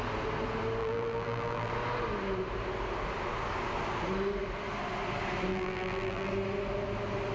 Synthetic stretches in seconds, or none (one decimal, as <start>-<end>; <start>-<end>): 0.8-1.7; 5.5-6.3